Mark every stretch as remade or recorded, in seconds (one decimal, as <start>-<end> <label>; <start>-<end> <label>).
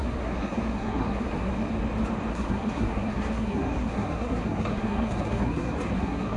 0.0-1.5 remade; 1.5-2.3 recorded; 2.3-6.4 remade